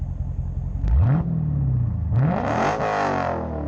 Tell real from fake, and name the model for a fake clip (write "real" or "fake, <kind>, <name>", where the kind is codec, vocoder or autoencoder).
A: real